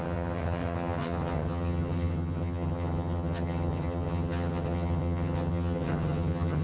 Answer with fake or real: fake